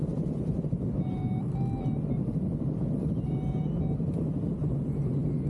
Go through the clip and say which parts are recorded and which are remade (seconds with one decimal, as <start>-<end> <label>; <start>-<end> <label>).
0.0-0.6 remade; 0.6-5.5 recorded